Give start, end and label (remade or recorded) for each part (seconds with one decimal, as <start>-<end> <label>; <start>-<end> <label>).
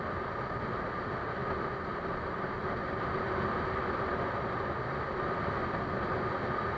0.0-6.8 recorded